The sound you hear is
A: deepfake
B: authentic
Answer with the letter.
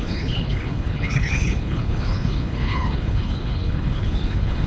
A